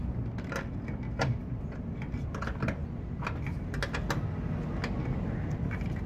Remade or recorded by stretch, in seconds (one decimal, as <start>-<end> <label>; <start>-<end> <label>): 0.0-6.1 recorded